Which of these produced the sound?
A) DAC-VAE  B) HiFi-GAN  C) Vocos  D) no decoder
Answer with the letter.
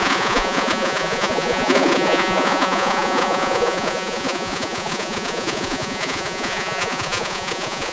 C